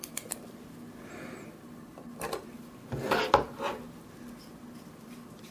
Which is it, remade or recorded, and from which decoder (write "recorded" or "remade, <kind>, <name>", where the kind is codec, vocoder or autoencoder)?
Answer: recorded